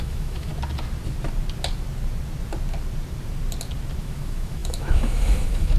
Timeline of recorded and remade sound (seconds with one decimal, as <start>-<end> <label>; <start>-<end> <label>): 0.0-0.5 remade; 0.5-4.0 recorded; 4.0-5.8 remade